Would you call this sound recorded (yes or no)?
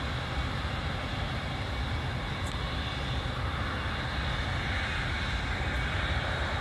yes